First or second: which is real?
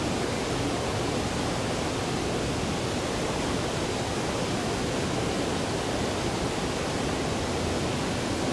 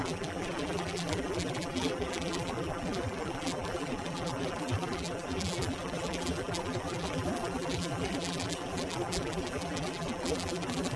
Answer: first